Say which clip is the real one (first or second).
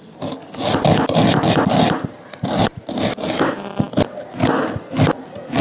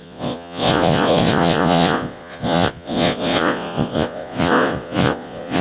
first